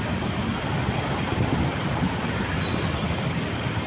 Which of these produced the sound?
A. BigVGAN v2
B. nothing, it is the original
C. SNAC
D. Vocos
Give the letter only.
B